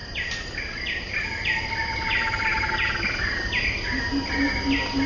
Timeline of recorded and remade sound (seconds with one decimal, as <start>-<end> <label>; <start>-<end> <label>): 0.0-5.1 recorded